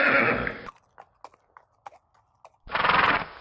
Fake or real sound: real